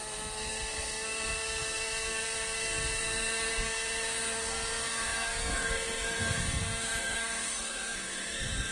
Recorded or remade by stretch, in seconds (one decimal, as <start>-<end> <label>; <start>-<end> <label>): 0.0-8.7 remade